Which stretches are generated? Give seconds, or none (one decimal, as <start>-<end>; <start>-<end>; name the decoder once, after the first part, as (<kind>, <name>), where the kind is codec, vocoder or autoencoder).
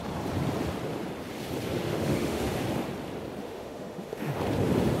1.8-2.4 (autoencoder, DAC-VAE); 3.4-4.4